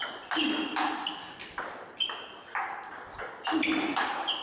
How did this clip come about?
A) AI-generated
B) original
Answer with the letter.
B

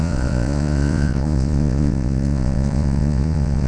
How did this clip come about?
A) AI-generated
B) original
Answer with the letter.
A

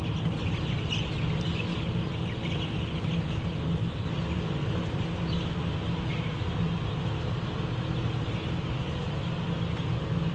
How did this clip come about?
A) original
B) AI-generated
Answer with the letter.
A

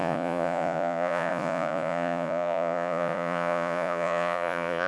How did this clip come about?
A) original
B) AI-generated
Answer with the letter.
B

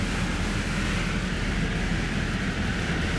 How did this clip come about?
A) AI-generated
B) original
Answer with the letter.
B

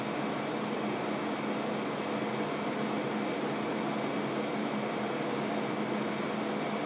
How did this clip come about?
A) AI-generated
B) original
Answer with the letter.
B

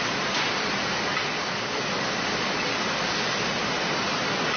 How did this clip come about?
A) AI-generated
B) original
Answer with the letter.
B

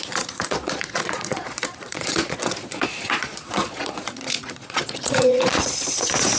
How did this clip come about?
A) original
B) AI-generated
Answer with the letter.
B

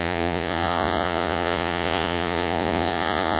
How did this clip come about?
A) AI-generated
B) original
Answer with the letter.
A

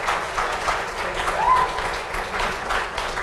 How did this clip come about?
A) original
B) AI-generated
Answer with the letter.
B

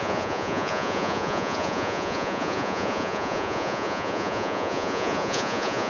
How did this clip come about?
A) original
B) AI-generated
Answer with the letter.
B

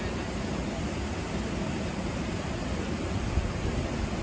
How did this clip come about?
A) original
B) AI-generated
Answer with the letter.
A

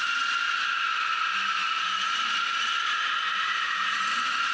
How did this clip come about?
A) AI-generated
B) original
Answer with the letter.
B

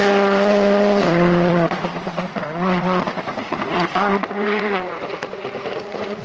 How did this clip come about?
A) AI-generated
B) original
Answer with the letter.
A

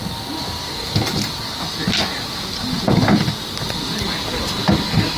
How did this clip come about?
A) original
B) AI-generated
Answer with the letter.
A